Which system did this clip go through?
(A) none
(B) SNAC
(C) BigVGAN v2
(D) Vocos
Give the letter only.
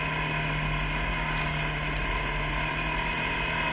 A